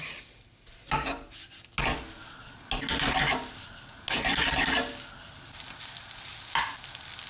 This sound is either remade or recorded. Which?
recorded